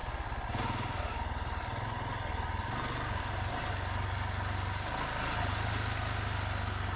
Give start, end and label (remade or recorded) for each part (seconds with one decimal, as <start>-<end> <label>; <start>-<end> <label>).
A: 0.0-7.0 recorded